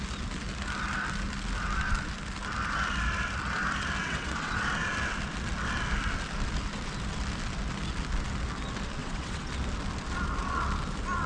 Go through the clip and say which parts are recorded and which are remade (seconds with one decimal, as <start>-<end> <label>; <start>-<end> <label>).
0.0-4.0 recorded; 4.0-4.6 remade; 4.6-9.0 recorded; 9.0-9.5 remade; 9.5-11.3 recorded